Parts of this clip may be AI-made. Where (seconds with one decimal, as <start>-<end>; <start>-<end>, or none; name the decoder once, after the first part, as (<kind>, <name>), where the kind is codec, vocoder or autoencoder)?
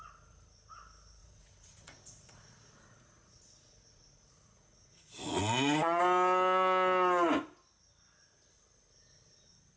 1.2-6.0 (vocoder, Vocos)